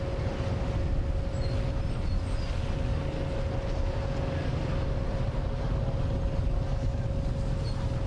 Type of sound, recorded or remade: recorded